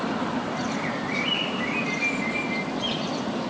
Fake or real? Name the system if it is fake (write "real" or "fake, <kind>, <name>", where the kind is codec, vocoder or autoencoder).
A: real